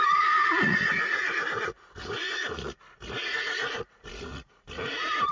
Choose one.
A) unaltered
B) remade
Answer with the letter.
B